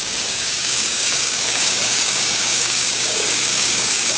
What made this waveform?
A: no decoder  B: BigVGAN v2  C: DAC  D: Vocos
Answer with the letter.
C